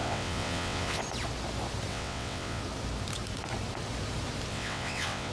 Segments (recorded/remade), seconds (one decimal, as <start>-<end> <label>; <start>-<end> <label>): 0.0-1.0 remade; 1.0-1.9 recorded; 1.9-2.6 remade; 2.6-4.5 recorded; 4.5-5.3 remade